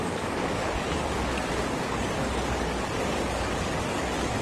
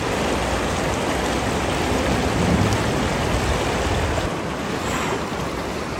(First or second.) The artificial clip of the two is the first